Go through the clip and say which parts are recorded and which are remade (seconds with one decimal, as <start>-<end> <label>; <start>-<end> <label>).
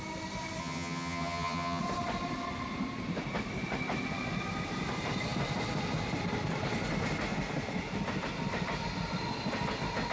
0.0-0.6 recorded; 0.6-1.8 remade; 1.8-10.1 recorded